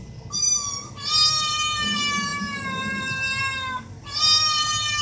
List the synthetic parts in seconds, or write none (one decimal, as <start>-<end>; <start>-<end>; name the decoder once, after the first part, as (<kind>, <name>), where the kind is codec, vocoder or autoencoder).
none